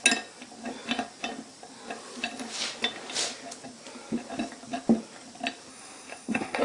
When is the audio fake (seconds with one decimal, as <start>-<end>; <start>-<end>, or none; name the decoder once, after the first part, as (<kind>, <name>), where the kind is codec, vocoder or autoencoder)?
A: 5.7-6.6 (codec, SNAC)